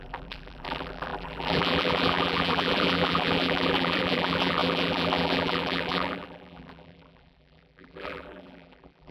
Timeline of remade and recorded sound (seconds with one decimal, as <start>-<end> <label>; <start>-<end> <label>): 0.0-9.1 remade